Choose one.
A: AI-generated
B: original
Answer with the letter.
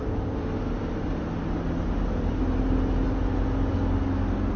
B